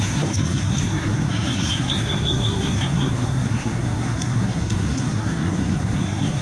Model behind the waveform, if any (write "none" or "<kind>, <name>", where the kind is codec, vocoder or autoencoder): codec, SNAC